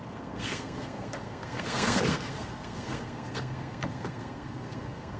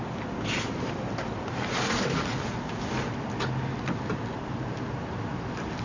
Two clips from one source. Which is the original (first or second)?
second